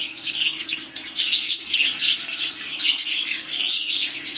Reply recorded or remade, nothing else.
remade